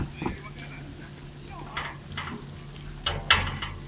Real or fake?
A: real